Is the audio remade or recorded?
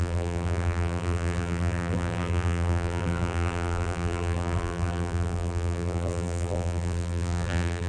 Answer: remade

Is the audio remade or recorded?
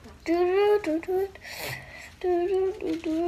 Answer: recorded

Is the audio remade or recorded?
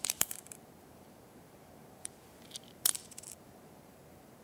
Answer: remade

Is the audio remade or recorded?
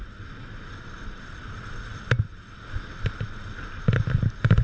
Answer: recorded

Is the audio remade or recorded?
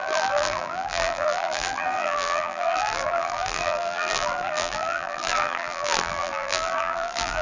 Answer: remade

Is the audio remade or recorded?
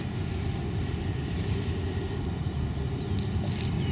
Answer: recorded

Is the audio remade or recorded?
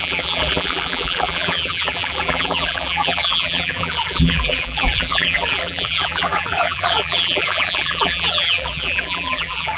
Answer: remade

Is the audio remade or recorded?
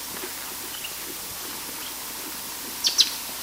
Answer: remade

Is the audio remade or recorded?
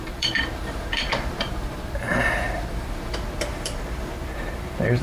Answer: remade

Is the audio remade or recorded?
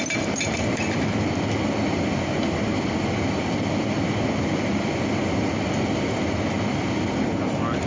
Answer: remade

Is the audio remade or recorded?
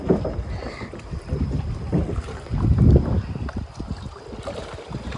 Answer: remade